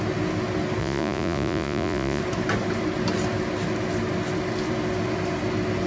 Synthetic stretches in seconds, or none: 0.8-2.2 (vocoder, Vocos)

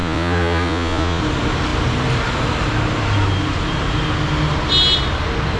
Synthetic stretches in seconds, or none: 0.0-1.2 (vocoder, Vocos)

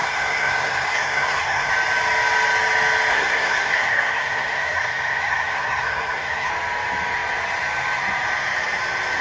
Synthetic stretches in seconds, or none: 0.0-1.7 (codec, SNAC); 3.1-6.5

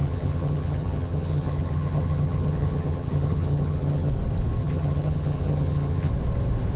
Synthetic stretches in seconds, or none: 0.0-4.1 (vocoder, HiFi-GAN); 4.6-6.1